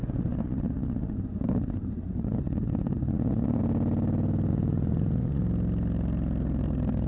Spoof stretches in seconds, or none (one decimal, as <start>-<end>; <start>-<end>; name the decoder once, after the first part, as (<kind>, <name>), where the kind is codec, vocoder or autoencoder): 0.0-3.6 (vocoder, Vocos); 4.5-5.4